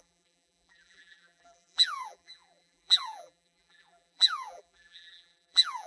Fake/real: fake